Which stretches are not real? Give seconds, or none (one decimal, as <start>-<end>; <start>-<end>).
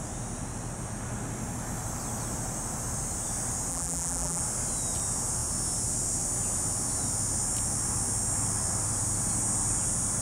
3.7-4.4